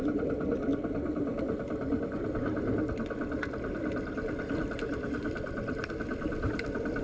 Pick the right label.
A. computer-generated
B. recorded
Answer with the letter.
B